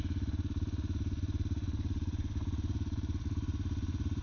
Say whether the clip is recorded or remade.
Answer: recorded